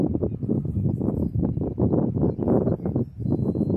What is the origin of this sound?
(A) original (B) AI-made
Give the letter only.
A